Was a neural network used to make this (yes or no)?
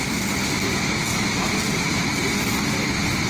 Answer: no